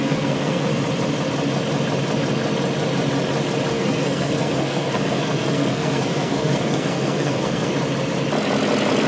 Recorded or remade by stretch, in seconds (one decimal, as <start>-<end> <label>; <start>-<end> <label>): 0.0-0.7 remade; 0.7-3.7 recorded; 3.7-7.7 remade; 7.7-9.1 recorded